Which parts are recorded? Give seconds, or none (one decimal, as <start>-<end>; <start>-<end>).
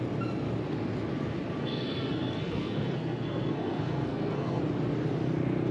0.0-1.6; 4.6-5.7